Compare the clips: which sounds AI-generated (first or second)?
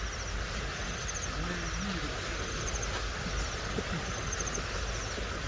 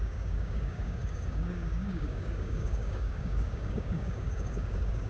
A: second